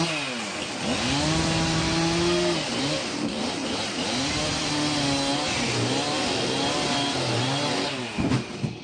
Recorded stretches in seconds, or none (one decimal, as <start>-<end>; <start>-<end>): 0.0-3.6; 4.7-8.8

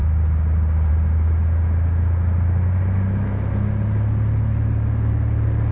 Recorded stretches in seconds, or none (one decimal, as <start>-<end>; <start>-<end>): 0.0-5.7

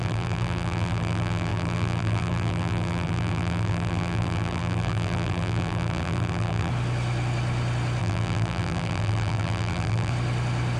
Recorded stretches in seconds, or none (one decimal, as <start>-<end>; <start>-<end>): 6.7-8.0; 10.1-10.8

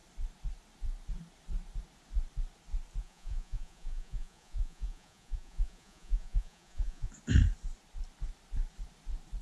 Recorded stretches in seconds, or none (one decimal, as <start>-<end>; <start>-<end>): 0.0-3.0; 7.1-9.4

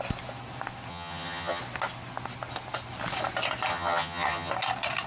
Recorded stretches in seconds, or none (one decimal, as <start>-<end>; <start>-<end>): 0.0-0.9; 1.6-3.7; 4.5-5.1

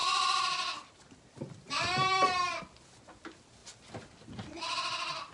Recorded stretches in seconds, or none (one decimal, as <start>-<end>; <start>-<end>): 2.6-5.3